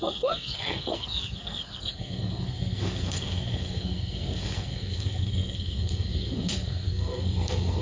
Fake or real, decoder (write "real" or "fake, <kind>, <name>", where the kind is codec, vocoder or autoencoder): fake, codec, SNAC